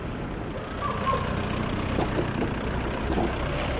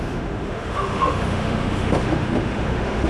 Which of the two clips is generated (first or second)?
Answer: second